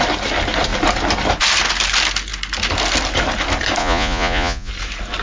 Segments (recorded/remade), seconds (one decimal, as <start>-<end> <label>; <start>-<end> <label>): 0.0-3.8 recorded; 3.8-4.7 remade; 4.7-5.2 recorded